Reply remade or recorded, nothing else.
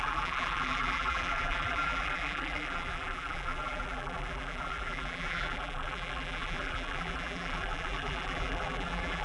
remade